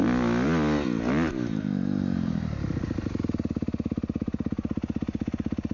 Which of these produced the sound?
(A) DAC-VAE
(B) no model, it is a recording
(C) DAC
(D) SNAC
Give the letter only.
B